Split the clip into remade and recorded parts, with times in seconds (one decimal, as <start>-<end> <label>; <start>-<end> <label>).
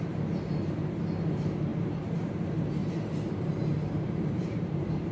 0.0-1.7 recorded; 1.7-2.3 remade; 2.3-2.8 recorded; 2.8-5.1 remade